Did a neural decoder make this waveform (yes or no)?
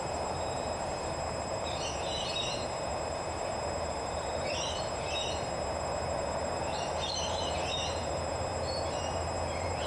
yes